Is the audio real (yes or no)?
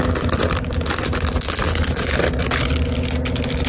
yes